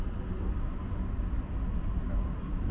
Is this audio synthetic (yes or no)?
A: no